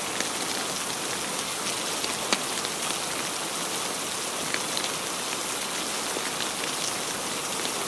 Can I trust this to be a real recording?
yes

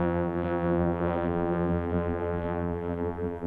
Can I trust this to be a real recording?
no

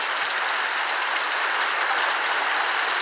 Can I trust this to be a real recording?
yes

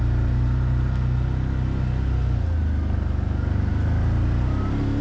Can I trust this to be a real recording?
yes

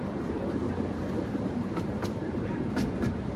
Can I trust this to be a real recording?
no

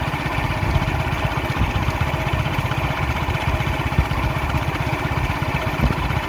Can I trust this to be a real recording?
no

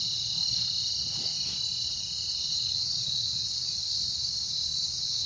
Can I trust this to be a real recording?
yes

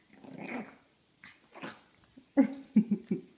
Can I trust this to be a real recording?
yes